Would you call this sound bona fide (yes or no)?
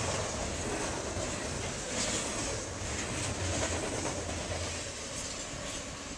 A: yes